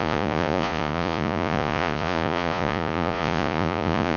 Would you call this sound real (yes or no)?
no